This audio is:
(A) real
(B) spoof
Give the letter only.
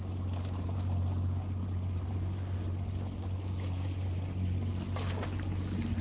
A